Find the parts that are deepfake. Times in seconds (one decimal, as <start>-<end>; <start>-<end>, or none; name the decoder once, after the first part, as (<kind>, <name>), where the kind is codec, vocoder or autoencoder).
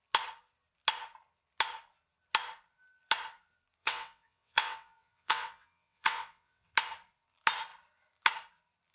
3.8-6.7 (vocoder, WaveNeXt)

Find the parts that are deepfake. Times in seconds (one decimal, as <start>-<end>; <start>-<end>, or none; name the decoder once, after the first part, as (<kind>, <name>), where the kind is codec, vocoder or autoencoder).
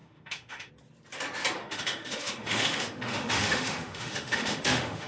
0.0-0.7 (autoencoder, DAC-VAE); 1.6-5.1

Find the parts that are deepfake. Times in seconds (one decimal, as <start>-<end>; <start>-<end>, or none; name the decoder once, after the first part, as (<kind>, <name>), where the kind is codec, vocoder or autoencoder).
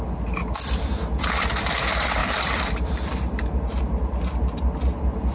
2.2-3.8 (vocoder, BigVGAN v2)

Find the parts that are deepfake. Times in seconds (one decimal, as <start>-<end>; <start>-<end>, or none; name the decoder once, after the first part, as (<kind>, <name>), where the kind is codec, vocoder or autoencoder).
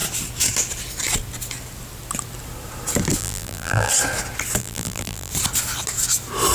3.2-3.9 (vocoder, BigVGAN v2); 4.6-5.3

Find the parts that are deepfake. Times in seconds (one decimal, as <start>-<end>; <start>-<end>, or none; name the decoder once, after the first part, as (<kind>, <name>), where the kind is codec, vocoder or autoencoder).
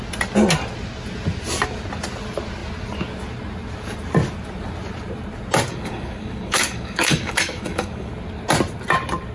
5.7-8.1 (codec, DAC)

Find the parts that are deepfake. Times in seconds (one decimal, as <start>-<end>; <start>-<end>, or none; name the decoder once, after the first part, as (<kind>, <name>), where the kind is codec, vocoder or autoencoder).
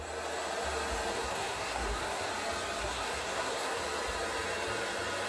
1.1-2.3 (codec, SNAC); 2.8-3.8